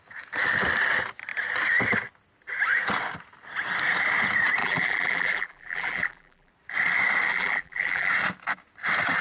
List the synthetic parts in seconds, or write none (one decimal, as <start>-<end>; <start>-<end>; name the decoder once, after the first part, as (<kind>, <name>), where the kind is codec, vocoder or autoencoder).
4.6-6.5 (vocoder, BigVGAN v2); 7.3-8.1